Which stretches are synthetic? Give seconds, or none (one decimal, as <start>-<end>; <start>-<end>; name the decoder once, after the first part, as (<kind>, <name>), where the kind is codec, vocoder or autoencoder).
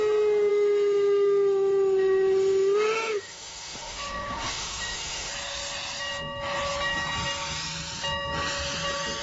0.5-5.3 (autoencoder, DAC-VAE)